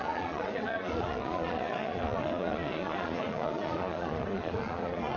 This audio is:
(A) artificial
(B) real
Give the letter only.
A